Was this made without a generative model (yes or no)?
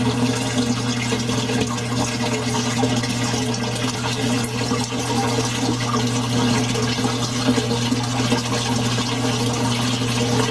yes